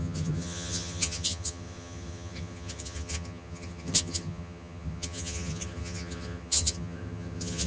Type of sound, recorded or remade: remade